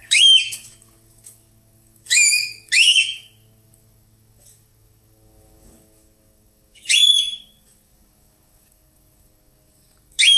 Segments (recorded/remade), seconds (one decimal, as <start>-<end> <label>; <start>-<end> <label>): 0.0-10.4 remade